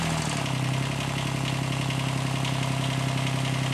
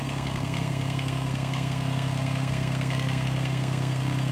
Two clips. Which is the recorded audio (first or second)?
first